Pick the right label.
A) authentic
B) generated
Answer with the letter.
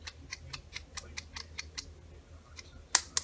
A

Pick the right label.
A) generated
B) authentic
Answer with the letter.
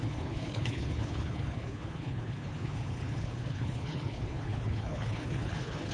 A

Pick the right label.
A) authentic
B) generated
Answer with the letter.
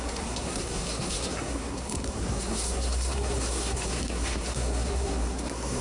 B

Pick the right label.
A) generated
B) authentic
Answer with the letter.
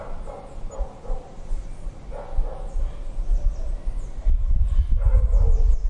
B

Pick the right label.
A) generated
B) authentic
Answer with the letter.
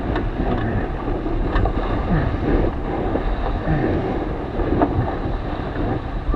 B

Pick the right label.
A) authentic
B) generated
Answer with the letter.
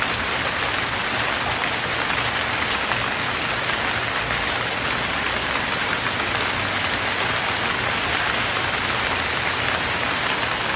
A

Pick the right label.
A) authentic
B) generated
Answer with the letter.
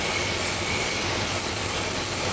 A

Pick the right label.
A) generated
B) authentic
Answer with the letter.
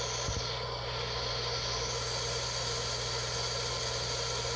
B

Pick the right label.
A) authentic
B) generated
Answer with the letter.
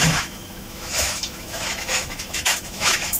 B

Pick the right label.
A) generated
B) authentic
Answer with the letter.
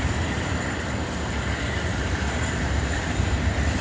A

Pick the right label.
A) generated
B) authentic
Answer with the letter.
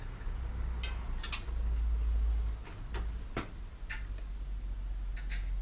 B